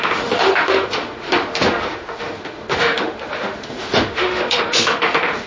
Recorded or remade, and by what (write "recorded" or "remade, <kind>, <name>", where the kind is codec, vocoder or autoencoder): remade, autoencoder, DAC-VAE